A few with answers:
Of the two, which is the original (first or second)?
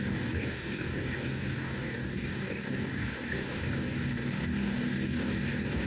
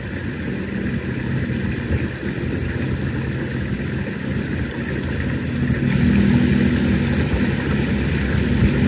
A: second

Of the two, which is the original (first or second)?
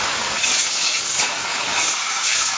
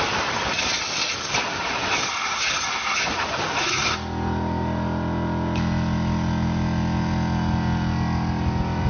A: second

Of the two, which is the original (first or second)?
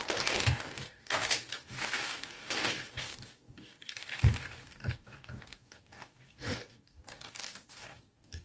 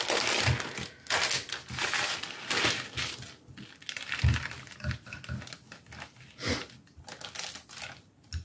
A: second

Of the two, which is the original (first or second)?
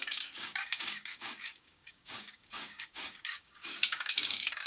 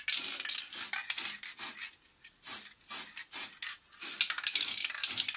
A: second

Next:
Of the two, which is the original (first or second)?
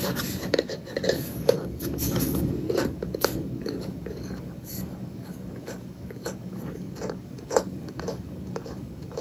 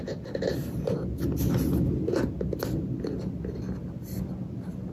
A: second